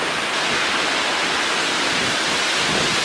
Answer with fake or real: real